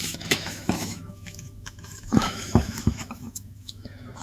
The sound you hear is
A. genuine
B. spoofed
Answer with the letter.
B